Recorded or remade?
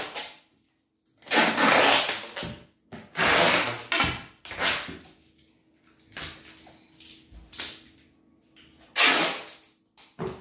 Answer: recorded